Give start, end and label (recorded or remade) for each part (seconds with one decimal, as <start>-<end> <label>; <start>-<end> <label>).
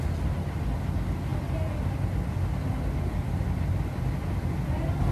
0.0-5.1 recorded